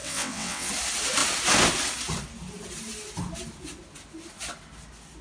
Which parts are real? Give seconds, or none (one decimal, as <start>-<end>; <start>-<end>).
0.7-5.2